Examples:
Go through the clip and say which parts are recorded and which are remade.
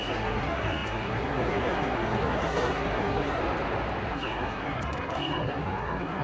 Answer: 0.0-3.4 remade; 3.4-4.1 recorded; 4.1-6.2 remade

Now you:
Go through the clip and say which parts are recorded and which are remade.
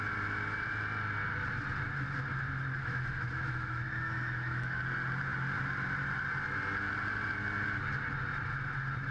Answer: 0.0-2.8 recorded; 2.8-4.8 remade; 4.8-9.1 recorded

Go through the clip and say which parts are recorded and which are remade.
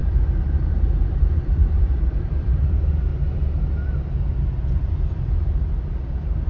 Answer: 0.0-3.1 remade; 3.1-5.3 recorded; 5.3-6.5 remade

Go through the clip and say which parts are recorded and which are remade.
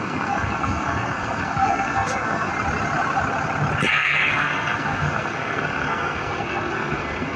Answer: 0.0-2.5 remade; 2.5-3.9 recorded; 3.9-7.4 remade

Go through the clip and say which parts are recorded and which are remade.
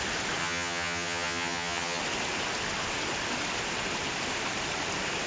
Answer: 0.0-0.4 recorded; 0.4-2.0 remade; 2.0-5.3 recorded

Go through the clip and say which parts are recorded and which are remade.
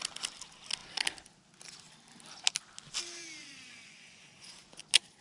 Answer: 0.0-3.4 recorded; 3.4-4.8 remade; 4.8-5.2 recorded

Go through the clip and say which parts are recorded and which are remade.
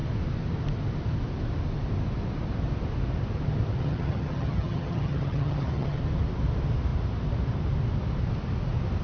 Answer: 0.0-3.8 recorded; 3.8-6.0 remade; 6.0-9.0 recorded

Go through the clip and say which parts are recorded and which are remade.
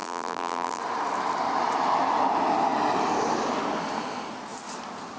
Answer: 0.0-0.8 remade; 0.8-5.2 recorded